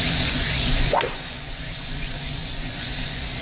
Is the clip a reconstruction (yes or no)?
yes